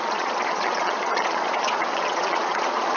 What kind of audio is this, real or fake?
fake